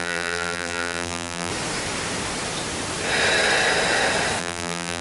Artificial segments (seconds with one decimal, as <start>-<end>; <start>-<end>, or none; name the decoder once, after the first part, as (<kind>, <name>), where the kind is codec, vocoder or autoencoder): 0.0-1.5 (vocoder, BigVGAN v2); 4.4-5.0